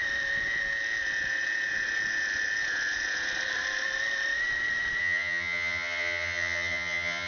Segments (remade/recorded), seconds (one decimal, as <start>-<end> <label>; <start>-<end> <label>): 0.0-5.0 recorded; 5.0-7.3 remade